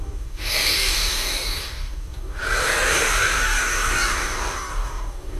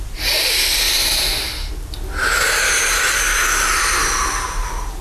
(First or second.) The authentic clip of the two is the second